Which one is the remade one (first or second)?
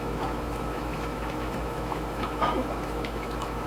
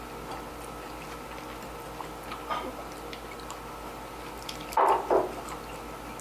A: first